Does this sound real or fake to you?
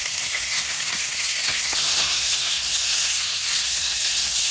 fake